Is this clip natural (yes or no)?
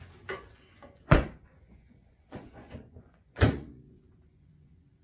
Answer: no